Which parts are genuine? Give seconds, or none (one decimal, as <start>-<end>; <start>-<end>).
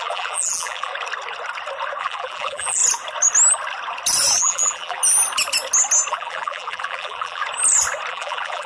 0.9-2.0; 2.8-4.4; 5.0-6.1; 7.4-8.1